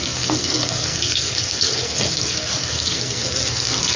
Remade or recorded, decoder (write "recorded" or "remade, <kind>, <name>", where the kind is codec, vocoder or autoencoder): remade, codec, SNAC